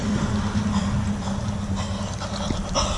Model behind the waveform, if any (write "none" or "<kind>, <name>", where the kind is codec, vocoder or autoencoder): none